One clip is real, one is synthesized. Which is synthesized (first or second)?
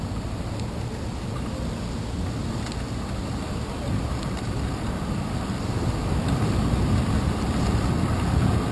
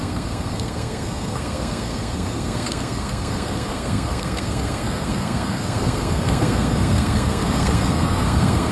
second